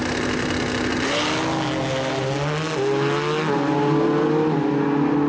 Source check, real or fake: real